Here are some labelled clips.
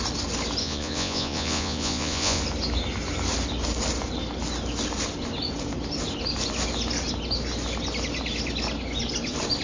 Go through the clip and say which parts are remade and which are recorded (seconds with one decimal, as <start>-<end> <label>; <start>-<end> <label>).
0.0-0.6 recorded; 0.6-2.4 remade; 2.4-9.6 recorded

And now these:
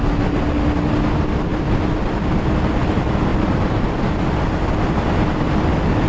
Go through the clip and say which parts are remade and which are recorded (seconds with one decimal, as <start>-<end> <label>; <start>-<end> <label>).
0.0-6.1 recorded

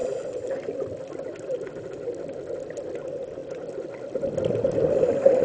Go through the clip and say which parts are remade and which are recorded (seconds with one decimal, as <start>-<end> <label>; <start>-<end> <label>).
0.0-5.4 recorded

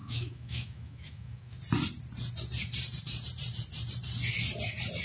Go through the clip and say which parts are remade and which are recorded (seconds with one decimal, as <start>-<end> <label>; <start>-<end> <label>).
0.0-1.6 remade; 1.6-5.0 recorded

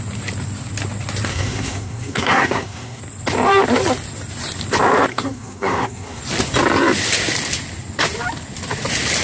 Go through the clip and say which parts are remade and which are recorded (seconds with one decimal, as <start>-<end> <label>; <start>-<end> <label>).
0.0-1.3 recorded; 1.3-3.0 remade; 3.0-5.1 recorded; 5.1-6.2 remade; 6.2-9.2 recorded

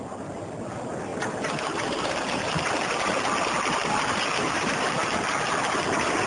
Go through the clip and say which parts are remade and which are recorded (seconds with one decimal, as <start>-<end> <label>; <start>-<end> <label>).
0.0-6.3 recorded

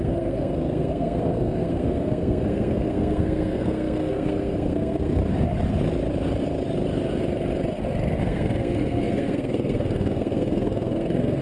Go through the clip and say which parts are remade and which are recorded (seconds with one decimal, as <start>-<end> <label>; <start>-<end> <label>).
0.0-5.2 remade; 5.2-8.2 recorded; 8.2-11.4 remade